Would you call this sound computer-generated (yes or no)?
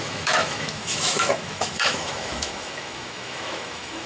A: yes